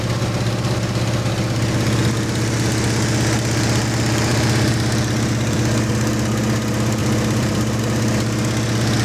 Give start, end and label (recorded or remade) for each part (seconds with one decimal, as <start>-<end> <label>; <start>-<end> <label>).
0.0-4.3 recorded; 4.3-5.9 remade; 5.9-7.0 recorded; 7.0-7.8 remade; 7.8-9.0 recorded